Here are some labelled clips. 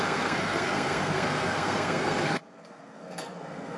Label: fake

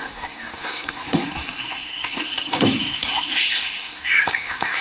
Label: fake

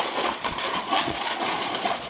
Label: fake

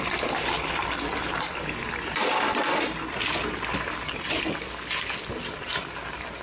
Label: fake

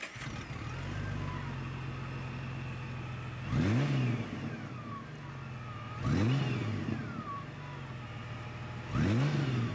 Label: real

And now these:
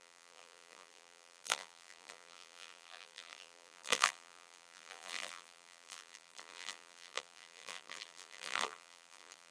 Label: fake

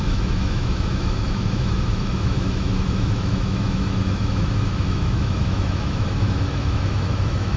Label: fake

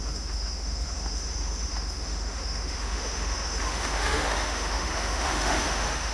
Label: fake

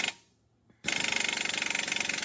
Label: real